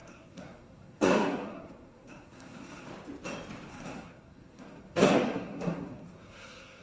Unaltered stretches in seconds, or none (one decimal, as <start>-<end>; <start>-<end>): 2.9-3.7